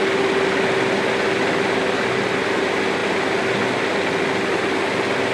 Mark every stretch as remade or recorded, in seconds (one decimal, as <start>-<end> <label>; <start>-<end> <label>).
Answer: 0.0-5.3 recorded